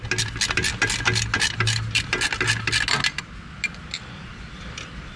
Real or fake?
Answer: real